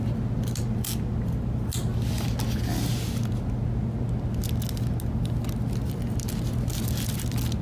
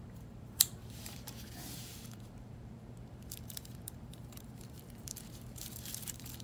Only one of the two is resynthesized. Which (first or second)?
second